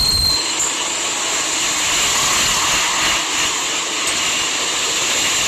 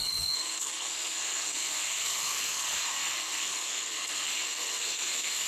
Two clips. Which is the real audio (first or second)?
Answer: first